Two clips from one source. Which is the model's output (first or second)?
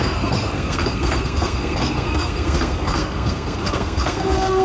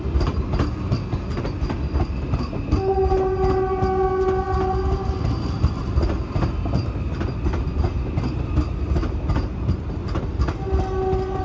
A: first